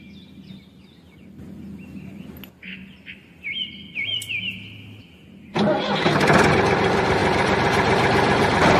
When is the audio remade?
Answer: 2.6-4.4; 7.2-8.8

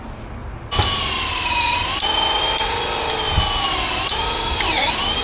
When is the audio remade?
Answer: none